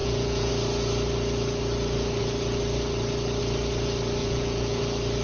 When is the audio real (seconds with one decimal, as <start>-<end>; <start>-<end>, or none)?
0.5-4.2; 4.8-5.2